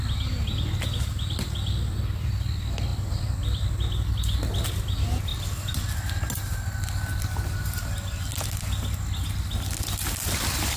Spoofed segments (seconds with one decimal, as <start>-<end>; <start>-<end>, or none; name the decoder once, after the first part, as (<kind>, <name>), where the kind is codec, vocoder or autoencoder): none